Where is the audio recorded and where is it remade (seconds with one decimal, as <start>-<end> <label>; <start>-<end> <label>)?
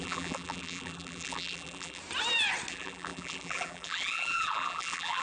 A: 0.0-2.0 remade; 2.0-2.7 recorded; 2.7-5.2 remade